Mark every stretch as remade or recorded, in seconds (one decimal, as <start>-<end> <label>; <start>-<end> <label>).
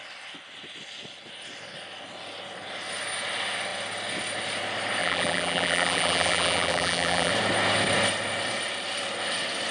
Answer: 0.0-5.0 recorded; 5.0-7.3 remade; 7.3-9.7 recorded